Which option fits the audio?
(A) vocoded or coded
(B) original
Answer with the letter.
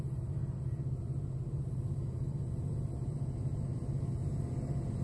B